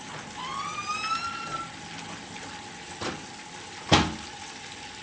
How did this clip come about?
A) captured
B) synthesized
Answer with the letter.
A